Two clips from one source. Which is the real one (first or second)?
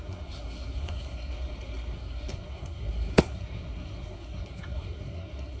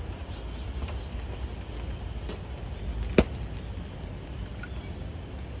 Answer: second